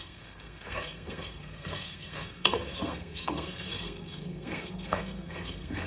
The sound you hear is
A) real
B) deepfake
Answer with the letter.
B